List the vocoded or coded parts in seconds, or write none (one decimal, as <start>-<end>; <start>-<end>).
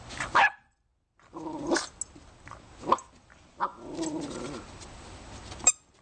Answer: none